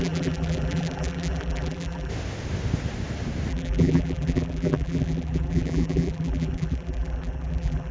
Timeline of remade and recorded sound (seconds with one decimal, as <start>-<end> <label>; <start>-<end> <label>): 0.0-2.1 remade; 2.1-3.5 recorded; 3.5-7.9 remade

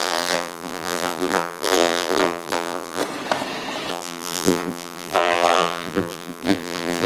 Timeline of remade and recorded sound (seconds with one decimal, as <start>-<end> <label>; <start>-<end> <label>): 0.0-3.0 remade; 3.0-3.9 recorded; 3.9-7.1 remade

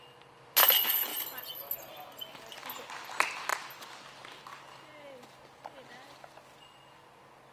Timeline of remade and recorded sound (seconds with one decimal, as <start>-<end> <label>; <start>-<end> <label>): 0.0-7.5 recorded

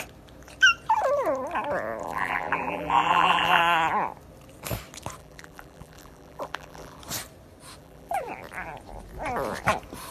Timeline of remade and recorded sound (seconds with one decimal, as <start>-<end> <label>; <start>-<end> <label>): 0.0-2.0 recorded; 2.0-3.6 remade; 3.6-5.2 recorded; 5.2-7.0 remade; 7.0-7.8 recorded; 7.8-8.3 remade; 8.3-10.1 recorded

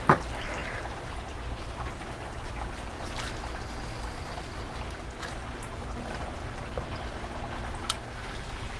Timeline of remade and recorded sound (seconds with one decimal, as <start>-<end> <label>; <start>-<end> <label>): 0.0-8.8 recorded

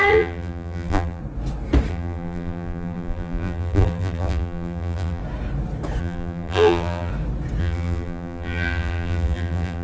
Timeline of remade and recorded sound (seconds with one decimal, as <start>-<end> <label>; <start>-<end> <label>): 0.0-1.2 remade; 1.2-1.9 recorded; 1.9-5.2 remade; 5.2-6.0 recorded; 6.0-7.1 remade; 7.1-7.6 recorded; 7.6-9.8 remade

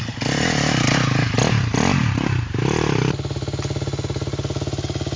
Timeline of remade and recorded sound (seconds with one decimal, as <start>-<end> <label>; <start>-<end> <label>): 0.0-2.0 recorded; 2.0-3.1 remade; 3.1-5.2 recorded

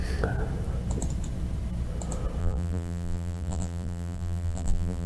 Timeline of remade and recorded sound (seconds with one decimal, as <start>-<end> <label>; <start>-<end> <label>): 0.0-2.4 recorded; 2.4-5.1 remade